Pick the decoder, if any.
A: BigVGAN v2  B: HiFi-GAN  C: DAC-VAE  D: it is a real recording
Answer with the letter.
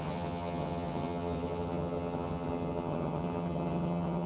B